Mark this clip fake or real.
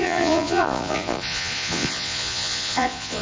fake